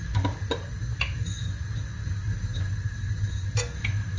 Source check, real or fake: real